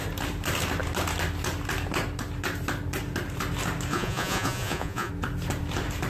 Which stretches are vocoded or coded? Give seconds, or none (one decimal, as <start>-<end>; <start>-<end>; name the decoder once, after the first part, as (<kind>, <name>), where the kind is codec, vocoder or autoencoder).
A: 3.9-5.1 (vocoder, Vocos)